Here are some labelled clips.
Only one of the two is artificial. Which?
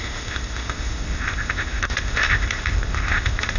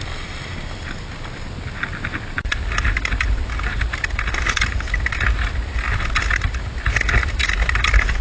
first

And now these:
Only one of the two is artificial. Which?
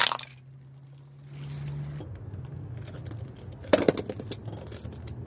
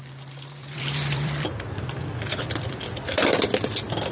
second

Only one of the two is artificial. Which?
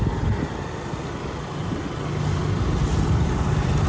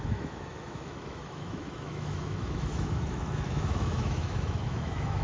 second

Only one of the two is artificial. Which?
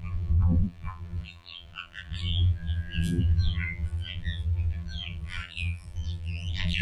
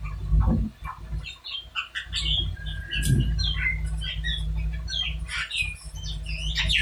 first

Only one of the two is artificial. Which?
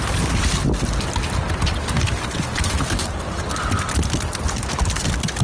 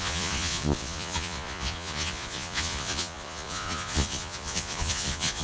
second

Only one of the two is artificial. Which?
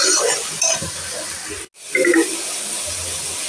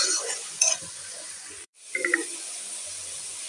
second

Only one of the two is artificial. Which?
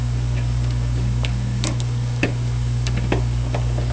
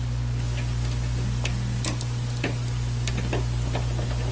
first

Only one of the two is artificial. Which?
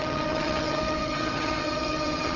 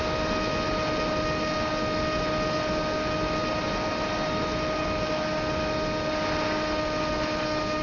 first